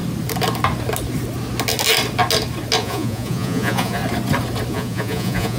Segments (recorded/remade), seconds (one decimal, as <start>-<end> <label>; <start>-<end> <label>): 0.0-2.8 recorded; 2.8-4.0 remade; 4.0-4.7 recorded; 4.7-5.6 remade